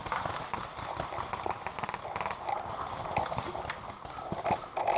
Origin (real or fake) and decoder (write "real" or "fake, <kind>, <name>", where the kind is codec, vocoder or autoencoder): real